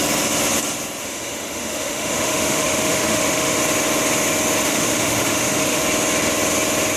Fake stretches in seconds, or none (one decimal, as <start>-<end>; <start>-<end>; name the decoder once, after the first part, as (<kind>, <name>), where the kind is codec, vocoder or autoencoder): 1.0-3.6 (autoencoder, DAC-VAE); 4.6-5.8